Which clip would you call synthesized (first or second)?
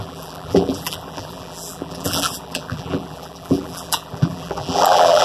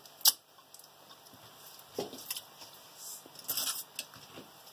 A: first